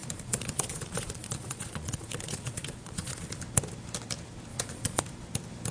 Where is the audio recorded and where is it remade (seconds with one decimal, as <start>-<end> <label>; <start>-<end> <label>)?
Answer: 0.0-3.4 remade; 3.4-4.5 recorded; 4.5-5.0 remade; 5.0-5.7 recorded

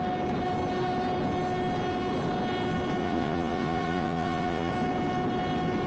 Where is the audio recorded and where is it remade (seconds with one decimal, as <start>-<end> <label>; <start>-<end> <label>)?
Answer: 0.0-3.0 recorded; 3.0-4.7 remade; 4.7-5.9 recorded

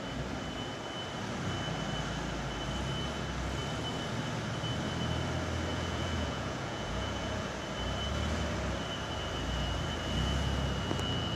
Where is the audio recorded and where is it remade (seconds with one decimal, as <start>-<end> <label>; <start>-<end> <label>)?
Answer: 0.0-5.7 recorded; 5.7-7.5 remade; 7.5-11.4 recorded

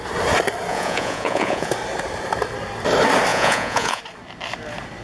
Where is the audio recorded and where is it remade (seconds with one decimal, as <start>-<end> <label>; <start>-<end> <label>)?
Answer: 0.0-0.7 recorded; 0.7-1.7 remade; 1.7-3.3 recorded; 3.3-4.0 remade; 4.0-5.0 recorded

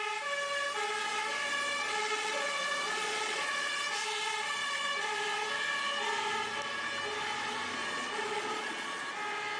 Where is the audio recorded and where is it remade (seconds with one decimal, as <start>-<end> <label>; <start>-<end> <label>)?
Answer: 0.0-1.9 recorded; 1.9-3.7 remade; 3.7-4.6 recorded; 4.6-5.1 remade; 5.1-7.8 recorded; 7.8-9.0 remade; 9.0-9.6 recorded

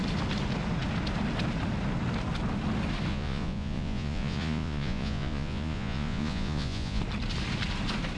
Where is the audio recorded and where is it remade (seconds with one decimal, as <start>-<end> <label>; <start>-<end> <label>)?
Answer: 0.0-3.1 recorded; 3.1-7.0 remade; 7.0-8.2 recorded

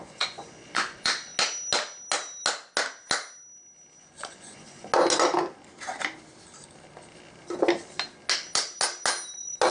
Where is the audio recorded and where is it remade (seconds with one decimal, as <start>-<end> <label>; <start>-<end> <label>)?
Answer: 0.0-1.3 remade; 1.3-4.0 recorded; 4.0-4.9 remade; 4.9-9.7 recorded

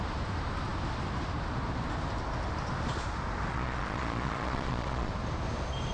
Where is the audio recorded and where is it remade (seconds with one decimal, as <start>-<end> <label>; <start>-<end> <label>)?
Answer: 0.0-3.5 recorded; 3.5-5.1 remade; 5.1-5.9 recorded